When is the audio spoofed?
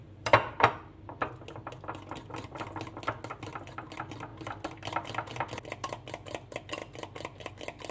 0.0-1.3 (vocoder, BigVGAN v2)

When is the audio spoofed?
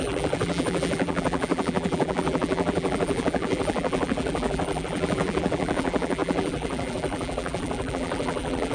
0.0-8.7 (vocoder, BigVGAN v2)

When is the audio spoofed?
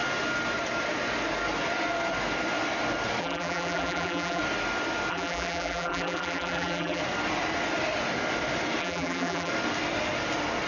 3.2-4.4 (vocoder, BigVGAN v2); 5.1-7.0; 8.8-9.5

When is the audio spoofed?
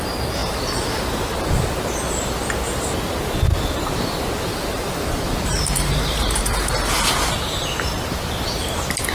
0.4-1.8 (vocoder, BigVGAN v2); 4.5-6.7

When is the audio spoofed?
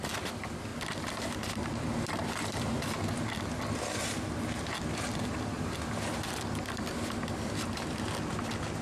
none